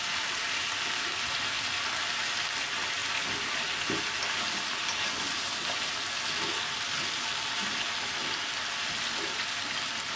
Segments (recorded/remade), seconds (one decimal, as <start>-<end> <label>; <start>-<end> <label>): 0.0-10.2 recorded